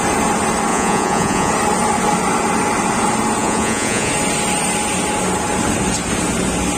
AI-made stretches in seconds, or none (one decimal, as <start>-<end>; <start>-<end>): 0.7-1.5; 3.4-4.1